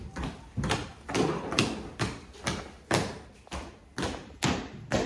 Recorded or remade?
recorded